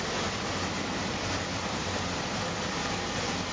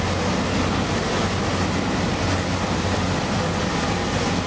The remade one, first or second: first